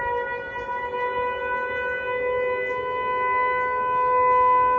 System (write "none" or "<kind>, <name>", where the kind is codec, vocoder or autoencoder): none